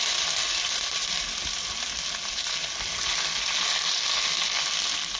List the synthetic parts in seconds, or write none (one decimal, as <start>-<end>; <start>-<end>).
none